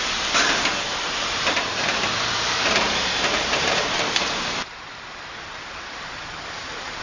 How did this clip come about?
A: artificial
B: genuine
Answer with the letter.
A